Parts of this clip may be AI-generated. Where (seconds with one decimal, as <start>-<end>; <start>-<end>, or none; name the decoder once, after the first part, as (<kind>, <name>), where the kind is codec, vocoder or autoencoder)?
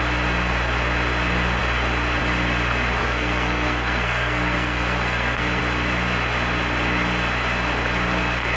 3.0-5.6 (codec, SNAC)